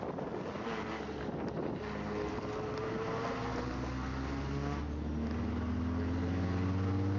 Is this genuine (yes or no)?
yes